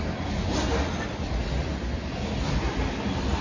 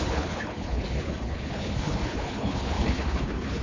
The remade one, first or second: second